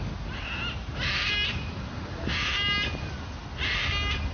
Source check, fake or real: real